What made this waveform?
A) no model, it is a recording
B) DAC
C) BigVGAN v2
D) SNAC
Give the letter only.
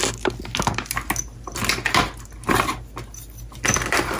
A